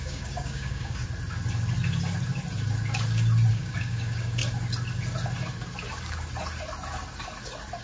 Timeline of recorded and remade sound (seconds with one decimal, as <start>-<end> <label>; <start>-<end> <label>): 0.0-1.0 remade; 1.0-3.5 recorded; 3.5-4.4 remade; 4.4-7.8 recorded